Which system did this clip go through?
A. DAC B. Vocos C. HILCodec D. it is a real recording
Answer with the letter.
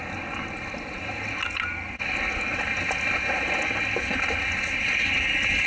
D